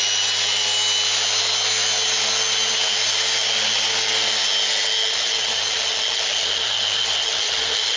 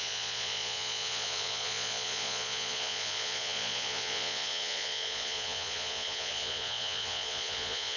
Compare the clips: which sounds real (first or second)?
first